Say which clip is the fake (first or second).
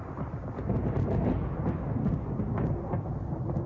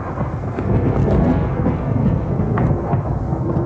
second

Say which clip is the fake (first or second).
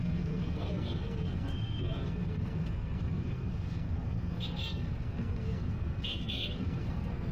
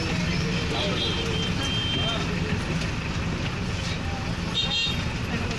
first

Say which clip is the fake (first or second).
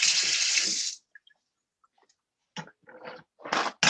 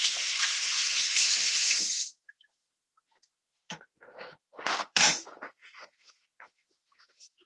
second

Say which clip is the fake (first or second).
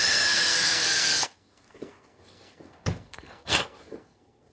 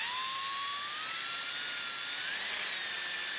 first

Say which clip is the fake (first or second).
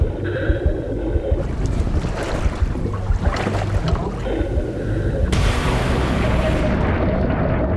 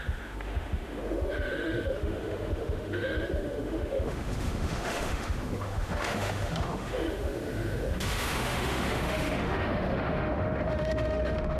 second